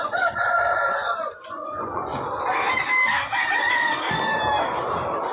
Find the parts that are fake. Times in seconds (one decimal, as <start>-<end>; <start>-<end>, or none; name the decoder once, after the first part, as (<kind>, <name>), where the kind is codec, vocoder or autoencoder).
0.0-2.1 (vocoder, Vocos)